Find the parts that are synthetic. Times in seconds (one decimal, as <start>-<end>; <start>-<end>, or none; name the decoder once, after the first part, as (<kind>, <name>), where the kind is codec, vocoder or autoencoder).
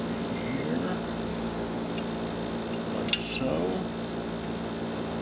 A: 1.3-1.9 (codec, DAC)